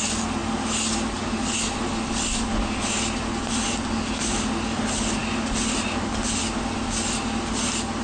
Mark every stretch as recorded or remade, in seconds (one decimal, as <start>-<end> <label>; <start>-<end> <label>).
0.0-8.0 recorded

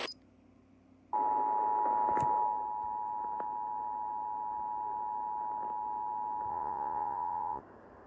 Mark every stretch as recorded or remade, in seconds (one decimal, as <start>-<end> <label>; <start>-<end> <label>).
0.0-6.5 recorded; 6.5-7.6 remade; 7.6-8.1 recorded

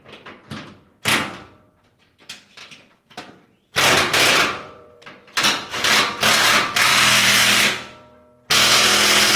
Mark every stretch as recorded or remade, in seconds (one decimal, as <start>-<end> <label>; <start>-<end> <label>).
0.0-2.6 recorded; 2.6-6.0 remade; 6.0-6.9 recorded; 6.9-7.6 remade; 7.6-9.4 recorded

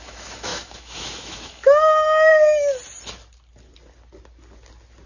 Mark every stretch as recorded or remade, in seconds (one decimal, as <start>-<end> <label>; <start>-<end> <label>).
0.0-2.3 remade; 2.3-5.1 recorded

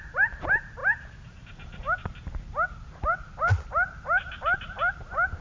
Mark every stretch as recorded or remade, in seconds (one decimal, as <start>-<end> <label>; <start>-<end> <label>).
0.0-5.4 recorded

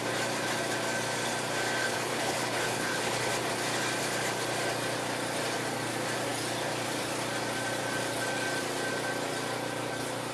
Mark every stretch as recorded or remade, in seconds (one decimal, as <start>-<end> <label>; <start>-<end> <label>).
0.0-1.8 recorded; 1.8-3.3 remade; 3.3-10.3 recorded

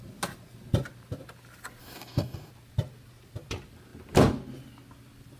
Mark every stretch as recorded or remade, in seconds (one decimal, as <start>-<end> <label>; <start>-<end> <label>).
0.0-1.8 recorded; 1.8-2.5 remade; 2.5-5.4 recorded

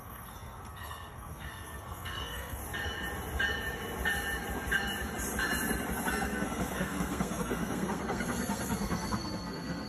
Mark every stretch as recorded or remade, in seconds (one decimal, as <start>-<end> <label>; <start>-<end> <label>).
0.0-2.6 remade; 2.6-6.1 recorded; 6.1-9.9 remade